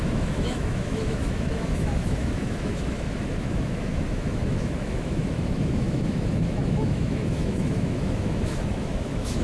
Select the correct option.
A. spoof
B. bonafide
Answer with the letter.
A